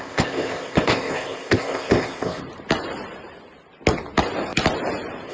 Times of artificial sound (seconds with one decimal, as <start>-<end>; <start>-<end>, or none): 0.0-2.4